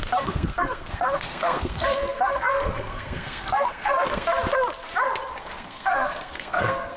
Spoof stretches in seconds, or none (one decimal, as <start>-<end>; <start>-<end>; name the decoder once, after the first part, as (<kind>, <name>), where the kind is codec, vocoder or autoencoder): 0.0-4.3 (codec, SNAC); 5.4-7.0